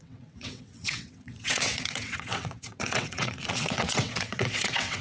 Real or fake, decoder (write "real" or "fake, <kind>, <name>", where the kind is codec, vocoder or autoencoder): fake, vocoder, WaveNeXt